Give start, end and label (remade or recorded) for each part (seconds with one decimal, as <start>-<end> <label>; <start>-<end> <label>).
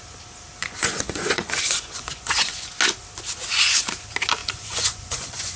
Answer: 0.0-0.6 recorded; 0.6-2.7 remade; 2.7-4.4 recorded; 4.4-5.6 remade